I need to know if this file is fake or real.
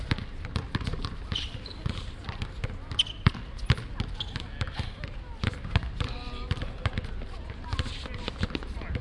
real